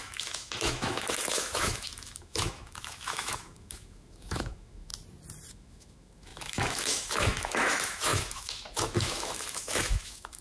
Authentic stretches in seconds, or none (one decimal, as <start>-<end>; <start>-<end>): 4.9-5.5